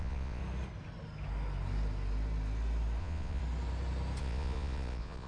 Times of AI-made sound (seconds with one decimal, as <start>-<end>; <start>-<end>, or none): 0.0-0.4; 3.0-3.4; 4.2-5.3